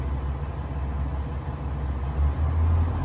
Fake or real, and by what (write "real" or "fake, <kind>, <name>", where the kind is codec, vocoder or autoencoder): real